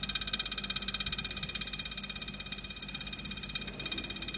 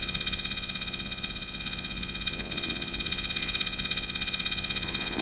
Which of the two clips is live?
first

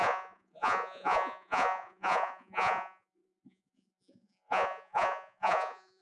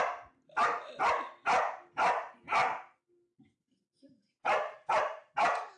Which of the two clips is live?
second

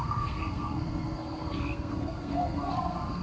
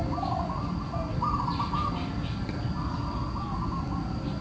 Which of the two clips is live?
second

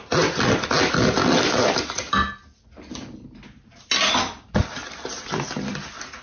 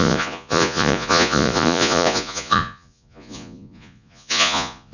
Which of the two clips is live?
first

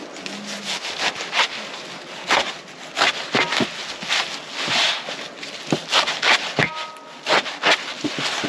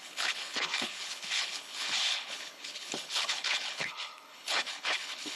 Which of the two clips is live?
first